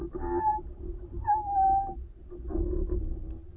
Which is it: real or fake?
fake